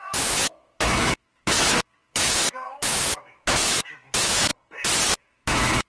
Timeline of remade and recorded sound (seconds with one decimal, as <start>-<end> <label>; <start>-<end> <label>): 0.0-4.5 remade; 4.5-5.1 recorded; 5.1-5.9 remade